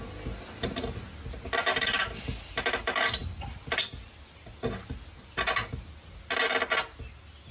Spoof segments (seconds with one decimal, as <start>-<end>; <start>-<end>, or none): none